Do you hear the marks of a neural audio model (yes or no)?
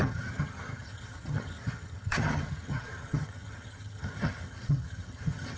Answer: yes